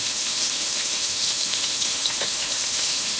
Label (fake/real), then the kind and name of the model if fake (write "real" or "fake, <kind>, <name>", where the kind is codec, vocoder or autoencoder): fake, autoencoder, DAC-VAE